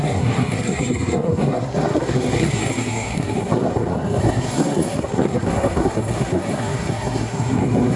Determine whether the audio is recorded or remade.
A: remade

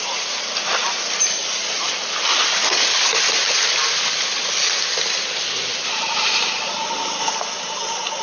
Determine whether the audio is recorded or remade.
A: recorded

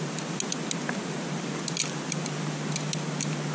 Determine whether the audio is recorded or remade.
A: recorded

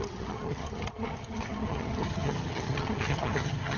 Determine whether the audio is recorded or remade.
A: remade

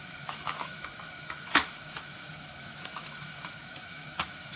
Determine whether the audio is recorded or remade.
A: remade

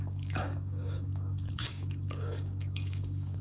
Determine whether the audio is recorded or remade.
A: remade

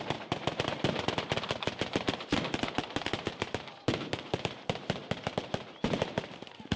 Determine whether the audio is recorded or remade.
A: remade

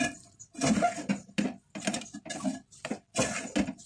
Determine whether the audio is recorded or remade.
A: recorded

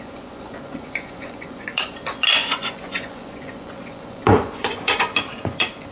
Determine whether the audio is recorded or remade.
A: remade